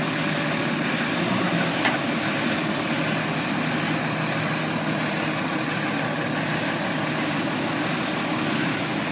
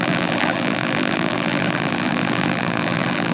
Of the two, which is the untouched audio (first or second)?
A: first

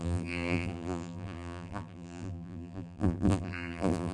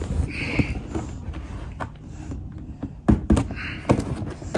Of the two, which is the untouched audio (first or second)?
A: second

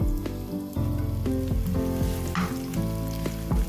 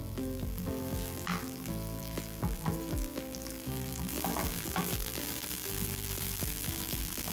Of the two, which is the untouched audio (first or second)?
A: first